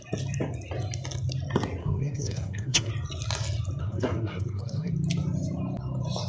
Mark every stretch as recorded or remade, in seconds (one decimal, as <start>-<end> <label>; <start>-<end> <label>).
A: 0.0-1.8 recorded; 1.8-2.9 remade; 2.9-3.8 recorded; 3.8-4.9 remade; 4.9-6.3 recorded